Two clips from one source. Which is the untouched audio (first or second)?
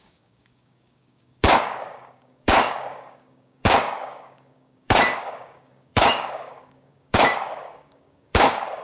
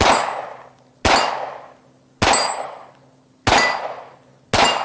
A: second